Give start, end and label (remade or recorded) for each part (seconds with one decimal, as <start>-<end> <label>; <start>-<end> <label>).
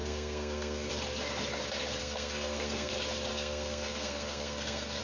0.0-0.9 remade; 0.9-2.0 recorded; 2.0-2.9 remade; 2.9-3.3 recorded; 3.3-5.0 remade